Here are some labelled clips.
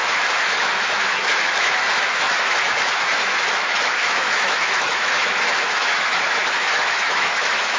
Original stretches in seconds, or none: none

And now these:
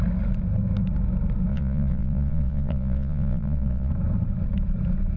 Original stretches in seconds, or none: 0.0-1.5; 3.9-5.2

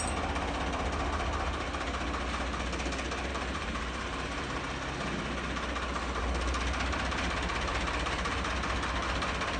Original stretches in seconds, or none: 0.0-3.3; 4.6-7.7; 8.5-9.6

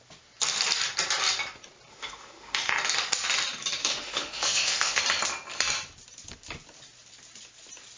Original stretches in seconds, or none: 0.0-1.9; 2.7-3.8; 5.0-8.0

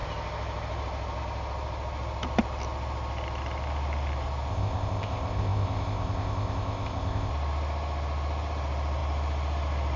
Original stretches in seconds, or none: 0.0-4.5; 7.3-10.0

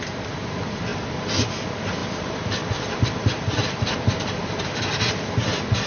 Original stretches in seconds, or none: 0.0-0.9; 1.5-2.0; 4.6-5.9

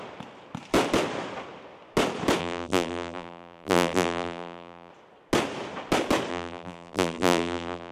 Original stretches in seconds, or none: 0.0-2.4; 4.9-6.3